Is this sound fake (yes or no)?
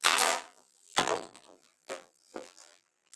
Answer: yes